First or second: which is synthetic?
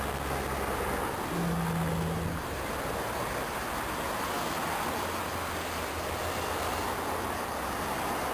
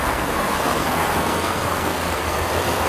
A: second